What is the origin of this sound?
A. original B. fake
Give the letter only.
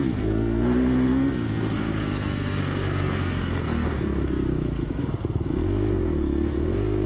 B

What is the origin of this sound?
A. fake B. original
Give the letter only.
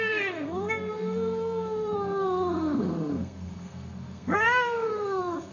A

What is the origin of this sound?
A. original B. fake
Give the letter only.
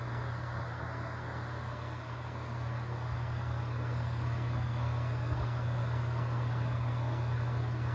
B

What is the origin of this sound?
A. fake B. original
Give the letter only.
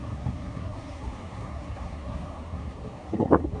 A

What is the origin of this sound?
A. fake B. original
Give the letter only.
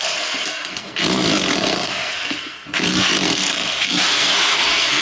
A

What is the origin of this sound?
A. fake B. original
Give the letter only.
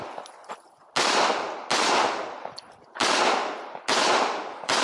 B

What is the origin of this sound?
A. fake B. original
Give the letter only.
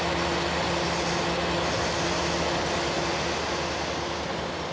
B